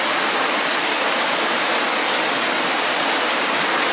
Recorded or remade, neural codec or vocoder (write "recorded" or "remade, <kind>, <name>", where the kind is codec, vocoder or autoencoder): recorded